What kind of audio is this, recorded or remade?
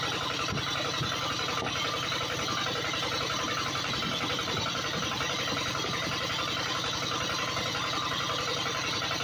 recorded